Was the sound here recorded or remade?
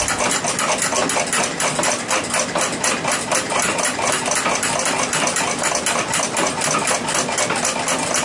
recorded